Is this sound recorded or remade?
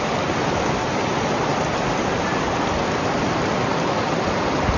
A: recorded